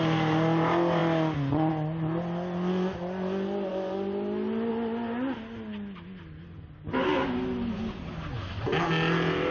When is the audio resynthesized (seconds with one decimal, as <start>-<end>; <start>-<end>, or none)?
none